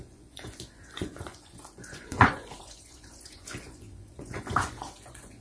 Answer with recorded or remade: remade